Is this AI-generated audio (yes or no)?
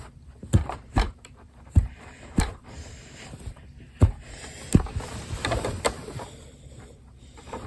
yes